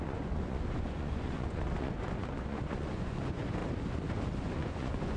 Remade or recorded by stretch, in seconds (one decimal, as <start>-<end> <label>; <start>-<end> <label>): 0.0-3.6 remade; 3.6-4.4 recorded; 4.4-5.2 remade